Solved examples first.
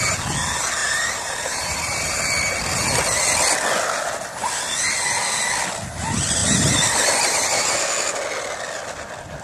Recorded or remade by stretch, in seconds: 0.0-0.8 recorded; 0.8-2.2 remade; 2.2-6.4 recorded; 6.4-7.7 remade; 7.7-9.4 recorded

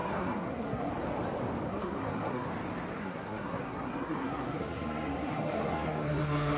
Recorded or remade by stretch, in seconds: 0.0-0.9 remade; 0.9-1.7 recorded; 1.7-2.5 remade; 2.5-3.0 recorded; 3.0-6.6 remade

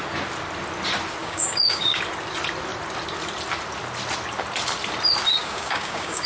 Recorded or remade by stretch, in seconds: 0.0-1.2 recorded; 1.2-2.0 remade; 2.0-5.4 recorded; 5.4-6.3 remade

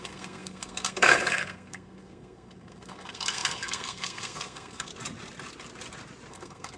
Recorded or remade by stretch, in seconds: 0.0-4.9 remade; 4.9-6.3 recorded; 6.3-6.8 remade